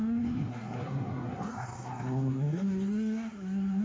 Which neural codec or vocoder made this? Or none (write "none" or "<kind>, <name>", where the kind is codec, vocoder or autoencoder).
codec, SNAC